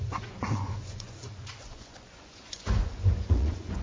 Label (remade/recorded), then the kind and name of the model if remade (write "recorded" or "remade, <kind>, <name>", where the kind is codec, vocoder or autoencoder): remade, vocoder, Vocos